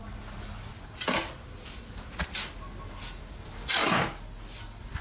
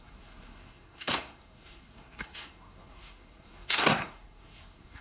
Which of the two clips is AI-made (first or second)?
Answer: second